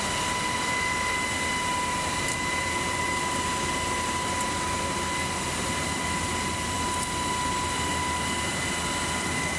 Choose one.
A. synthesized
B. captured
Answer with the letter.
B